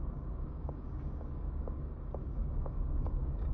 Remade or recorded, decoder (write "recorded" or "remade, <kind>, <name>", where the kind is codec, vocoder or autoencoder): remade, codec, DAC